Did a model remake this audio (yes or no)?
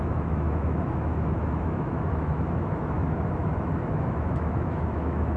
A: yes